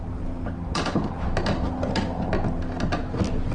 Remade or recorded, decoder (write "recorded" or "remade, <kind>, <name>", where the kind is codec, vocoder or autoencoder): recorded